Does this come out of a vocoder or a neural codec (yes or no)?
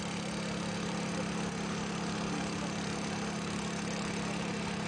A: no